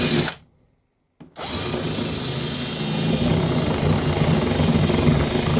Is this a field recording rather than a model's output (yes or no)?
yes